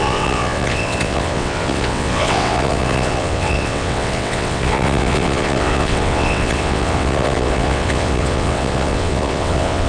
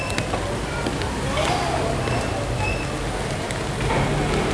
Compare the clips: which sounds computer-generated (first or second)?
first